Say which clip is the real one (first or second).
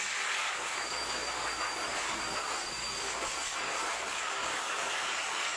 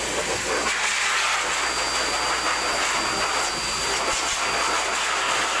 second